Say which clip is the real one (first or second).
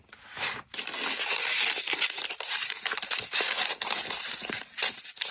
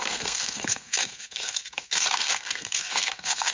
first